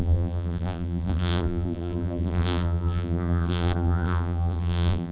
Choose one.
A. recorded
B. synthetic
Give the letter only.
B